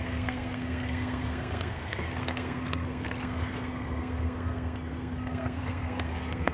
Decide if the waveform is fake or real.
fake